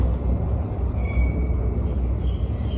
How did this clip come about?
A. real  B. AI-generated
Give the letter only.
A